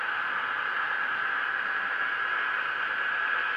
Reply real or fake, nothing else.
real